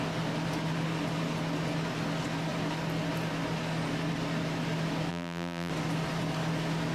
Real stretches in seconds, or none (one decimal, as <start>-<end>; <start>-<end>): 0.0-5.1; 5.7-6.9